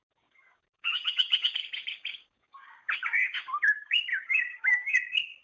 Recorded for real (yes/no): no